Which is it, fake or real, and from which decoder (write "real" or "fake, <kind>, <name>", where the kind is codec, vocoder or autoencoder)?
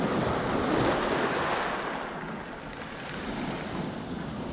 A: real